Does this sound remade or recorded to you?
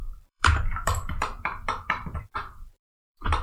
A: remade